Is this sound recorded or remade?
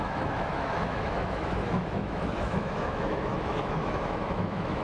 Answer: remade